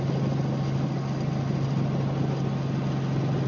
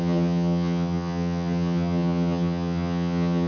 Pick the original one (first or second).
first